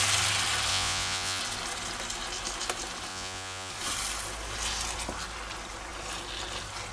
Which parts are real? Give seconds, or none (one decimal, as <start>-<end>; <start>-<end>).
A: 0.0-0.7; 1.4-3.1; 3.7-6.9